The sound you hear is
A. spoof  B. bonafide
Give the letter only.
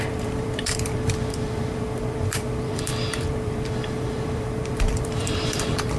A